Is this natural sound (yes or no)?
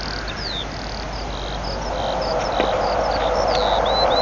yes